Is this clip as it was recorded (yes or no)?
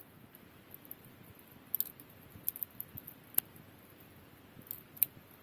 yes